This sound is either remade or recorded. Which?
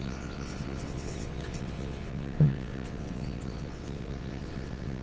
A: remade